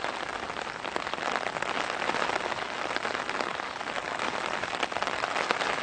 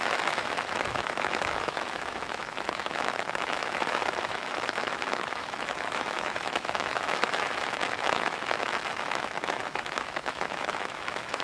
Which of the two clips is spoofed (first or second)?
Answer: second